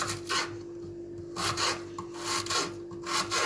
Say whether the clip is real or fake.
real